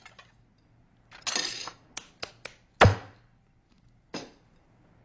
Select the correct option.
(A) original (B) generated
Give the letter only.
A